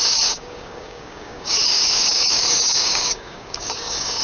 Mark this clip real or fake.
fake